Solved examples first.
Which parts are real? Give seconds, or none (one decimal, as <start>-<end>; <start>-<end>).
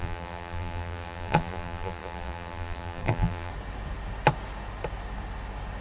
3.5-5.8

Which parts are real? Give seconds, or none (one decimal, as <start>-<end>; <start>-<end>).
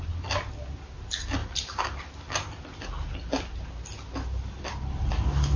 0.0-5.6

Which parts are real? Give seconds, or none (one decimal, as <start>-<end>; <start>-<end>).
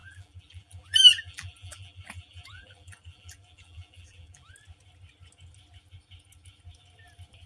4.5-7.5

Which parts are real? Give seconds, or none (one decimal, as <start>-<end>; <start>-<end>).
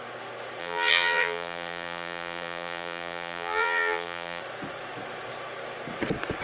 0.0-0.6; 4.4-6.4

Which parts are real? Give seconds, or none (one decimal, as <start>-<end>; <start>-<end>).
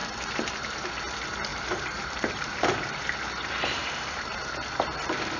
1.1-1.5; 4.4-5.4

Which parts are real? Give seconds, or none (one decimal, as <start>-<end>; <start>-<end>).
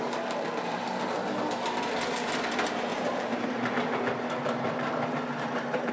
0.0-2.9